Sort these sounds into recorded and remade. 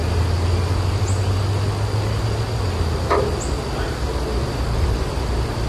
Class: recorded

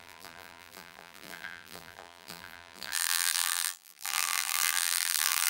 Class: remade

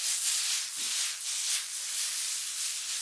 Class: recorded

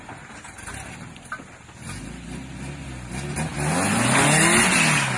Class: recorded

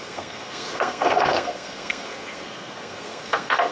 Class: remade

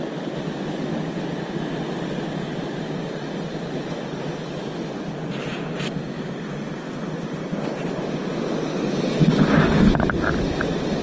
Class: recorded